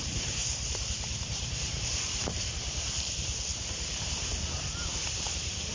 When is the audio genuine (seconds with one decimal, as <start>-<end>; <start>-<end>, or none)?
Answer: 0.4-0.9